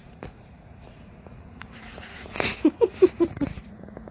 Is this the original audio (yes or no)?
no